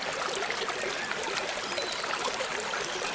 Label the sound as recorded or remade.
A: recorded